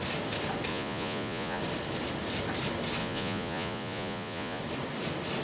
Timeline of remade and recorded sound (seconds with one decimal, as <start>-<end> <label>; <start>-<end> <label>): 0.0-0.7 recorded; 0.7-1.6 remade; 1.6-3.0 recorded; 3.0-4.6 remade; 4.6-5.4 recorded